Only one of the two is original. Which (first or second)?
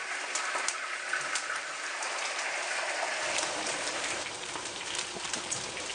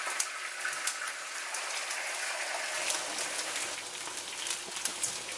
second